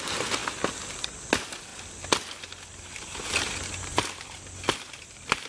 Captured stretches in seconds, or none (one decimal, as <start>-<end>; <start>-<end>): 0.0-5.5

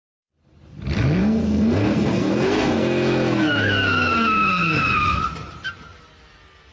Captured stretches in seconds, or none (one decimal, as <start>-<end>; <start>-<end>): 0.0-1.2; 5.2-6.7